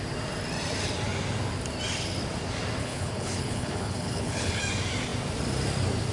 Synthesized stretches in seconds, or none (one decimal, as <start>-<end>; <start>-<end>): 2.8-4.6

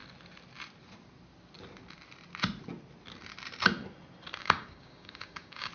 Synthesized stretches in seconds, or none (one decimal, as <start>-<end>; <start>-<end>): 4.4-5.7

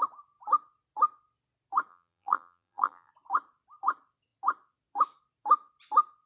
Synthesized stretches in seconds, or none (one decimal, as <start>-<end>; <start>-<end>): 1.9-3.1